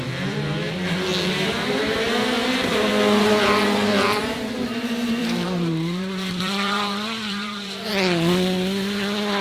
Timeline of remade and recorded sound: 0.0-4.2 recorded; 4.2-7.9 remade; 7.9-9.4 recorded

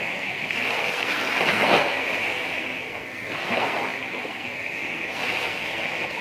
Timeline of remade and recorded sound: 0.0-6.2 remade

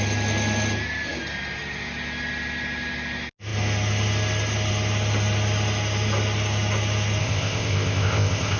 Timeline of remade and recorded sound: 0.0-7.2 recorded; 7.2-8.6 remade

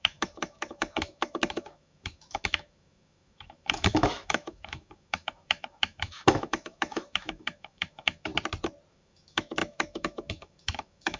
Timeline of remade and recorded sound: 0.0-8.3 remade; 8.3-8.9 recorded; 8.9-11.2 remade

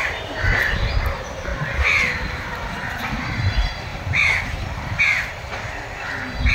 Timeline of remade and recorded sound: 0.0-1.5 remade; 1.5-3.0 recorded; 3.0-5.5 remade; 5.5-6.5 recorded

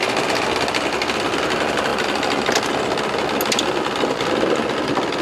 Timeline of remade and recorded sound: 0.0-5.2 recorded